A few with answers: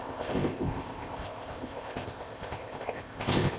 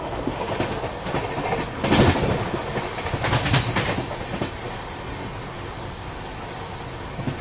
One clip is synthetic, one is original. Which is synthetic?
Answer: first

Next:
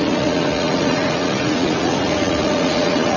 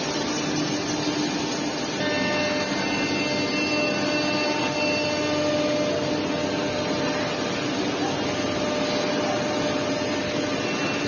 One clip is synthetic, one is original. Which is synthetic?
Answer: first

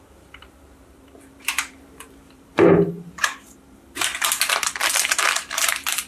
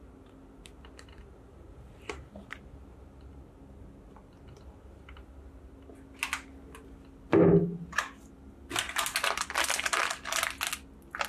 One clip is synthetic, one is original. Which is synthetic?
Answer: first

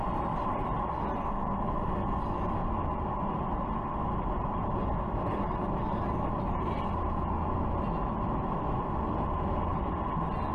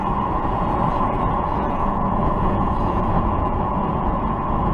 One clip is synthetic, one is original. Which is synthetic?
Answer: second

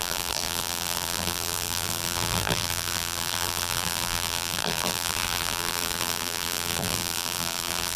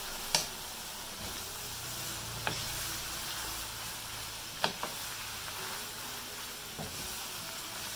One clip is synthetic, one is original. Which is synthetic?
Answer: first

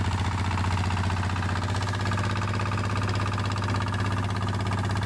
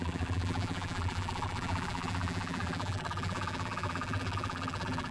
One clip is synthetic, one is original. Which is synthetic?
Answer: second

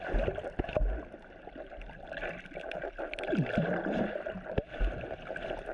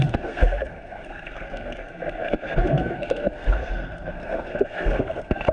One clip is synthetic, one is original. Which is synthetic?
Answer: second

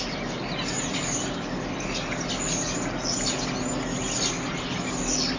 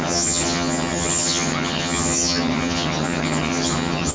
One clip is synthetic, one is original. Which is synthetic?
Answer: second